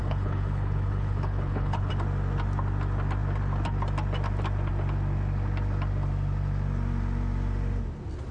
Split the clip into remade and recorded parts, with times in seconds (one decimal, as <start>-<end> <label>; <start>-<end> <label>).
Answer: 0.0-1.9 remade; 1.9-8.3 recorded